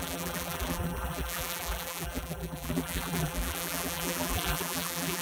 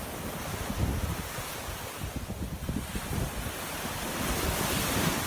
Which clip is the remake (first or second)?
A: first